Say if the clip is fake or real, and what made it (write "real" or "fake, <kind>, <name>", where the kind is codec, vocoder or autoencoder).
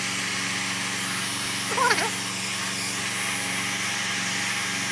real